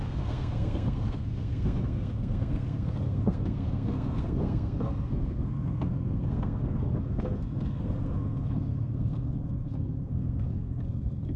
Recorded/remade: remade